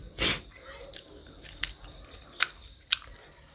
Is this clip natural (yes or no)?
yes